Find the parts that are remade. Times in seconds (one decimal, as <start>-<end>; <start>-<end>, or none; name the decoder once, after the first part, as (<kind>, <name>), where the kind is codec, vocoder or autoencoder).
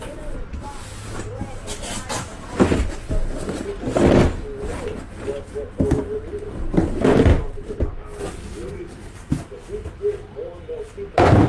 7.3-8.2 (vocoder, BigVGAN v2)